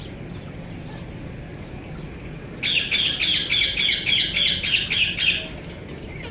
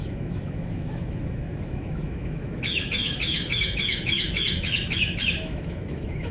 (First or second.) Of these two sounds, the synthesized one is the second